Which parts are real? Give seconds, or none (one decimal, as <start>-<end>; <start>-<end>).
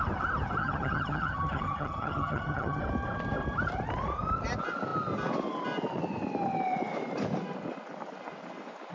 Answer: 0.0-0.6; 2.8-8.9